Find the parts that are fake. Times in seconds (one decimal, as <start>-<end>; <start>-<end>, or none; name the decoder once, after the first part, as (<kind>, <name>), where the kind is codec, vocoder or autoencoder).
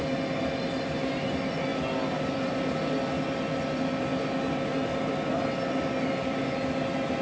none